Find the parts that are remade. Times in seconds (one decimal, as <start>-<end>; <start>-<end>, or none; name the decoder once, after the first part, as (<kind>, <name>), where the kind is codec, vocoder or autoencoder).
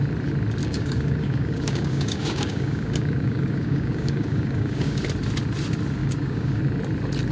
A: 0.6-5.0 (codec, DAC); 6.0-6.6